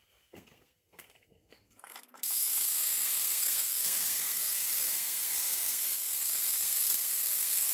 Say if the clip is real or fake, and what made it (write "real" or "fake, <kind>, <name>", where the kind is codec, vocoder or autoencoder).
fake, codec, SNAC